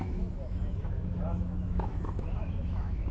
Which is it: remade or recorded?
remade